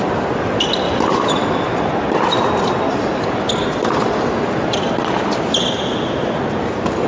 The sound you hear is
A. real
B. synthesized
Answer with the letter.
A